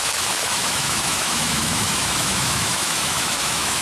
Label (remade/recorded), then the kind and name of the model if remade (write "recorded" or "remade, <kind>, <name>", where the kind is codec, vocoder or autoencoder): remade, autoencoder, DAC-VAE